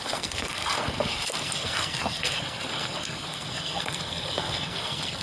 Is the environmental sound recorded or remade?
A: remade